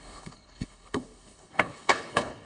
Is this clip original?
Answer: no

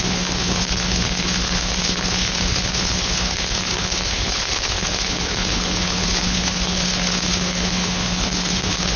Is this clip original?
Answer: no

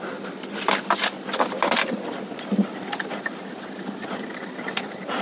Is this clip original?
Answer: yes